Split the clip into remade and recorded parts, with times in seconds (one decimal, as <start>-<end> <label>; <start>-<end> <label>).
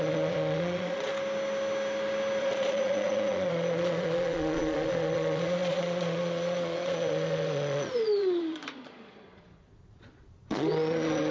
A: 0.0-1.1 remade; 1.1-2.4 recorded; 2.4-11.3 remade